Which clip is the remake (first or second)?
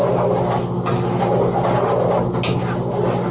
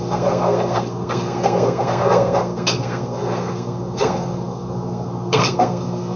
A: second